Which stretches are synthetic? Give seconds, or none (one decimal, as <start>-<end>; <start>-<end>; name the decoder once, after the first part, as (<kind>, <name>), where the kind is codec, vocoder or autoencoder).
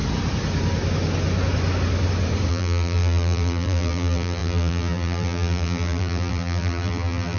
2.5-7.4 (vocoder, BigVGAN v2)